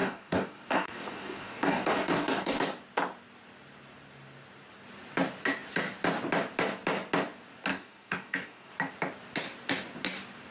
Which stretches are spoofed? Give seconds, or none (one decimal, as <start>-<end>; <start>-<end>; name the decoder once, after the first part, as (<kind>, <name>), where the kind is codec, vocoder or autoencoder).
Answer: 0.0-2.6 (codec, DAC); 7.7-8.7